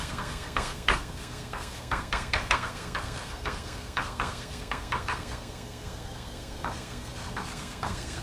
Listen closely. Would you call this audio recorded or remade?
remade